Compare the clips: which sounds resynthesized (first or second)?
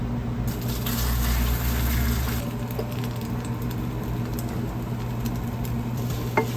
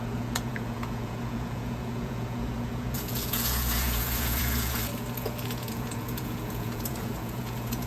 second